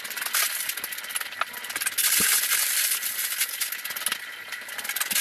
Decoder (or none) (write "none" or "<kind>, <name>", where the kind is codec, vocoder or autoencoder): none